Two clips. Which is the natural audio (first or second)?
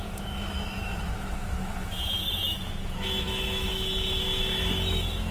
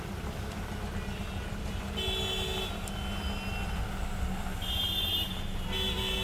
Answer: second